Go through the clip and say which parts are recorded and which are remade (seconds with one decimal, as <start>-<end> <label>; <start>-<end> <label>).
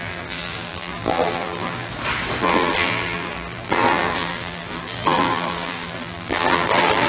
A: 0.0-1.9 remade; 1.9-2.4 recorded; 2.4-7.1 remade